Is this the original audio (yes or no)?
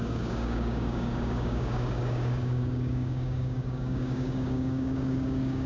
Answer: no